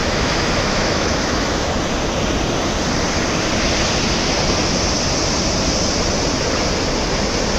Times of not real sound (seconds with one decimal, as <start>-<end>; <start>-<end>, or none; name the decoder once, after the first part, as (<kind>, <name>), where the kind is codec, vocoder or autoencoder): 0.0-1.7 (autoencoder, DAC-VAE)